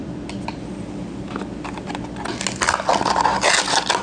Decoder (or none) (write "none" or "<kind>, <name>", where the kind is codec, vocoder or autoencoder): none